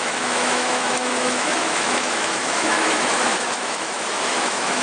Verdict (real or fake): fake